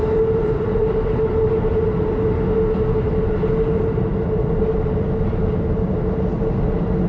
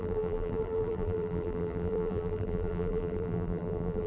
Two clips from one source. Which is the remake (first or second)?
second